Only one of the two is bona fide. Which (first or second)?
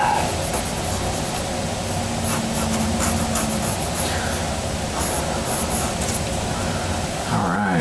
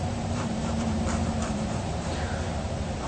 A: first